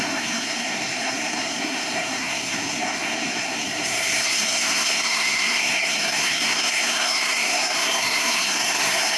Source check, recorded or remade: remade